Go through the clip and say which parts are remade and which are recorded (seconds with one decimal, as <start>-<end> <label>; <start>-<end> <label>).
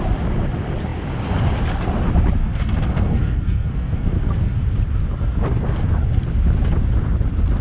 0.0-2.4 recorded; 2.4-4.6 remade; 4.6-7.6 recorded